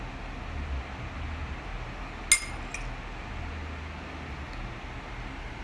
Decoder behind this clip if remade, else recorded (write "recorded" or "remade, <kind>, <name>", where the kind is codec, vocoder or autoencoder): recorded